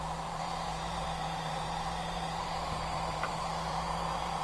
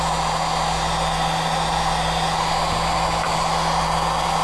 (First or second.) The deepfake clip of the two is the first